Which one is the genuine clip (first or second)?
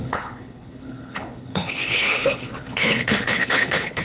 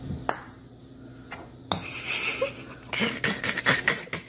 second